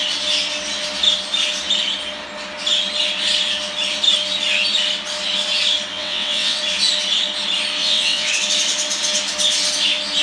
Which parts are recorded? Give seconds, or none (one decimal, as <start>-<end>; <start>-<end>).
0.0-5.9; 6.6-7.8; 8.3-10.2